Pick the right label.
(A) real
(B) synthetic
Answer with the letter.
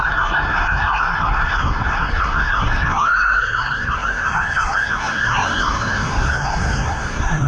B